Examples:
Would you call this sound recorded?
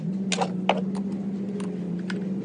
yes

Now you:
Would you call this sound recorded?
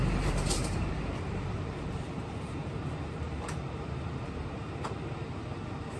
no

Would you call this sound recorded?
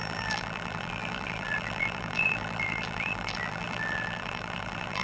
no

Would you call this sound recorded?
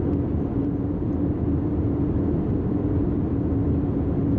yes